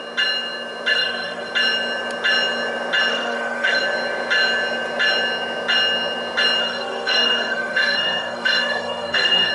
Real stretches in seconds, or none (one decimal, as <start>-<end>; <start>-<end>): 0.0-0.9; 1.5-3.1; 3.8-6.6